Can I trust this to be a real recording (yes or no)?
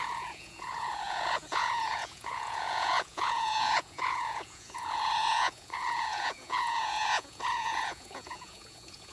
no